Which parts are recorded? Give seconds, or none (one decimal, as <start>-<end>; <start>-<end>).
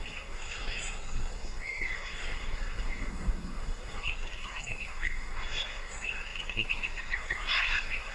none